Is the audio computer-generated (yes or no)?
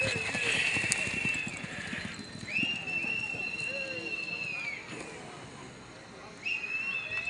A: no